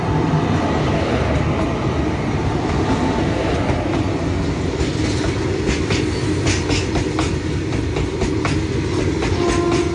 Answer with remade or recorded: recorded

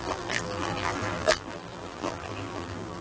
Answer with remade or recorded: remade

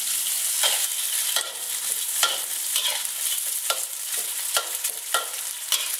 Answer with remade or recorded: remade